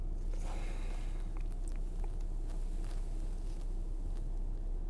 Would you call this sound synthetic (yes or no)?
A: no